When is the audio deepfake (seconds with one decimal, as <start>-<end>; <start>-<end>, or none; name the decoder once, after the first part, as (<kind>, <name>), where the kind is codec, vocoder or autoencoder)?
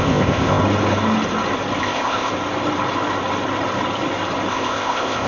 0.0-0.6 (codec, ZipCodec); 1.8-2.3; 4.5-5.3